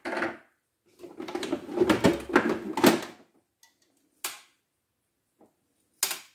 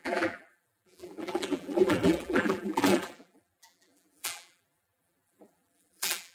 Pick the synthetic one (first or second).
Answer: second